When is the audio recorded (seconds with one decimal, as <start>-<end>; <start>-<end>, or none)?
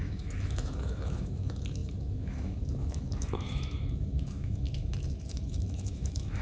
none